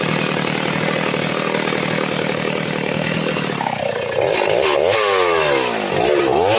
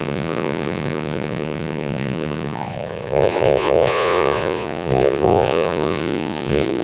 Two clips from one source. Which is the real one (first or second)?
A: first